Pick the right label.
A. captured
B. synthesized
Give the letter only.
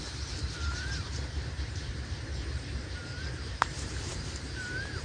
B